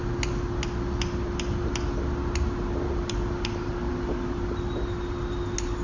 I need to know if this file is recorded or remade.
recorded